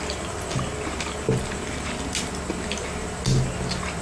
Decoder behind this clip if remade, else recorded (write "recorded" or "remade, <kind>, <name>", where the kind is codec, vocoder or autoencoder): recorded